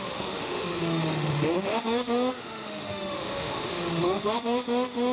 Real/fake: fake